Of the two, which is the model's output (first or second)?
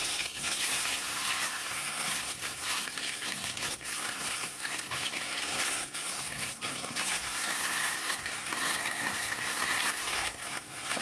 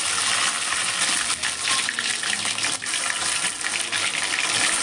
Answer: first